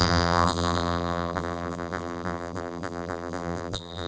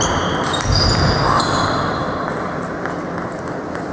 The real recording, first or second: second